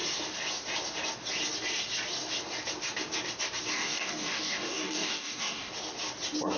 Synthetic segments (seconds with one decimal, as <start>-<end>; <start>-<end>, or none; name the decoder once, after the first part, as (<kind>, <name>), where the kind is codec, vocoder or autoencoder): 3.7-5.7 (codec, DAC)